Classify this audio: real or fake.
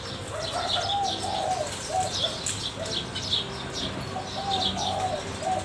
real